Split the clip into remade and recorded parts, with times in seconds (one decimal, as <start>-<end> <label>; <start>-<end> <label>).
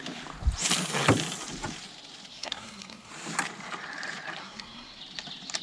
0.0-2.3 recorded; 2.3-3.1 remade; 3.1-4.4 recorded; 4.4-5.0 remade; 5.0-5.6 recorded